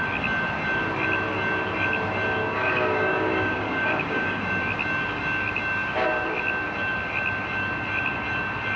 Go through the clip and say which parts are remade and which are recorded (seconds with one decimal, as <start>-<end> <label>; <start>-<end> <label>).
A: 0.0-2.4 recorded; 2.4-4.4 remade; 4.4-8.8 recorded